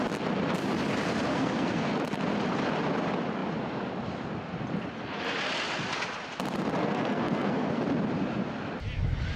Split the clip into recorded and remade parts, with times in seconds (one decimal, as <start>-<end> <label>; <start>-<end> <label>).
0.0-1.3 recorded; 1.3-1.9 remade; 1.9-6.8 recorded; 6.8-7.8 remade; 7.8-9.4 recorded